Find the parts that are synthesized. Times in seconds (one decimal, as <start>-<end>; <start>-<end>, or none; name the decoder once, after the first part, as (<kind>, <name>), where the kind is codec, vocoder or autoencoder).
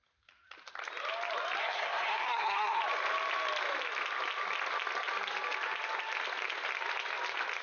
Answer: 1.6-2.8 (codec, SNAC)